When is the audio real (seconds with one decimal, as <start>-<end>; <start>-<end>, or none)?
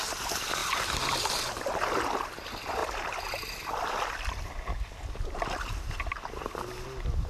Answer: 0.0-7.3